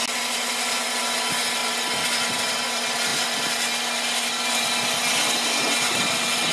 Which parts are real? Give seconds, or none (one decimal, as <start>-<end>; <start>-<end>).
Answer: 0.0-6.5

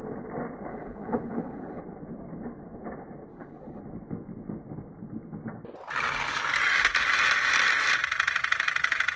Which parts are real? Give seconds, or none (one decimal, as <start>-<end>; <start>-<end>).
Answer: 0.0-0.7; 1.8-3.3; 3.8-9.2

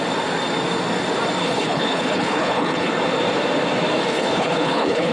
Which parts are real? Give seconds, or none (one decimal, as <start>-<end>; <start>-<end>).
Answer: 0.0-1.4; 2.9-4.1